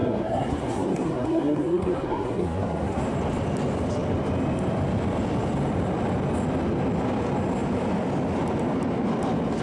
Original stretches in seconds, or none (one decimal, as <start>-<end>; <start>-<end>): 3.0-9.6